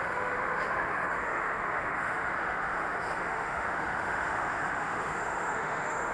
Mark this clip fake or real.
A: fake